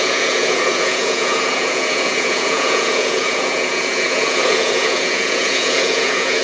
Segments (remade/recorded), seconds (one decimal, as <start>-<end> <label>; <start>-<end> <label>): 0.0-6.4 remade